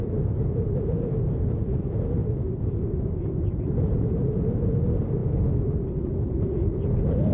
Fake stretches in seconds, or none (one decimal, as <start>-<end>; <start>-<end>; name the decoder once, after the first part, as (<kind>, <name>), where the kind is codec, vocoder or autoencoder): none